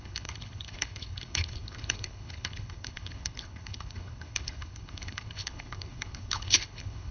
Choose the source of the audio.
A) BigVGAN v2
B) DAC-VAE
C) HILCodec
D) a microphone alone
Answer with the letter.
C